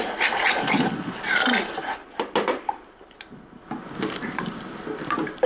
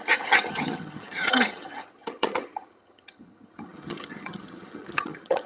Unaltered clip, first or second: first